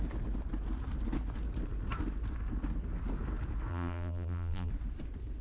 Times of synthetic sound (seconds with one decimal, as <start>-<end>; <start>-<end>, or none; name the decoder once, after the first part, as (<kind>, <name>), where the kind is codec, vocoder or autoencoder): 3.7-4.7 (vocoder, BigVGAN v2)